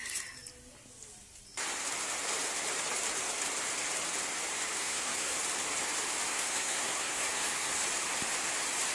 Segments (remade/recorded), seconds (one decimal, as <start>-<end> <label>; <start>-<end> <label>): 0.0-4.8 recorded; 4.8-5.4 remade; 5.4-6.3 recorded; 6.3-7.8 remade; 7.8-8.9 recorded